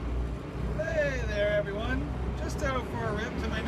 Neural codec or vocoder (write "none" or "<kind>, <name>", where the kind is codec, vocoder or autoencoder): none